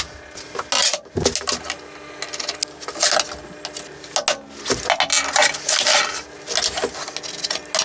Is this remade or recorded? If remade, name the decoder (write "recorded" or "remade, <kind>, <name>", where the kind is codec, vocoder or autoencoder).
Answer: recorded